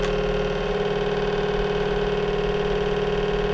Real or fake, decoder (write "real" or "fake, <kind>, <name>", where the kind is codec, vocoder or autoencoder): real